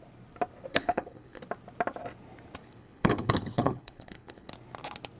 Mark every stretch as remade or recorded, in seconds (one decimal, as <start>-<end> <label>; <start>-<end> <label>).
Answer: 0.0-0.7 recorded; 0.7-1.4 remade; 1.4-2.6 recorded; 2.6-4.5 remade; 4.5-5.2 recorded